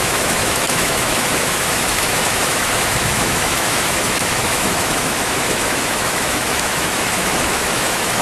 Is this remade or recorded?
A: remade